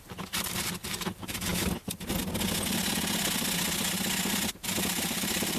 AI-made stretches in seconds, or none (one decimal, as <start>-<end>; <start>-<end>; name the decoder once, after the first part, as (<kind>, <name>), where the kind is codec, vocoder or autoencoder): 0.0-1.5 (vocoder, BigVGAN v2); 4.9-5.6